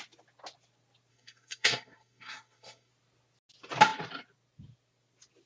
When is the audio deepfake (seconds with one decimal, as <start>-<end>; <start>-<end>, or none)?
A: 1.1-2.9